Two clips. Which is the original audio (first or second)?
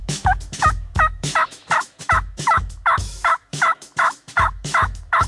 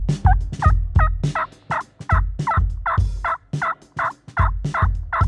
second